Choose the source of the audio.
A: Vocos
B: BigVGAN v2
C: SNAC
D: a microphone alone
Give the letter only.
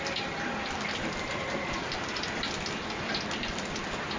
B